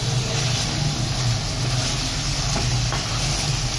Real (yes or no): yes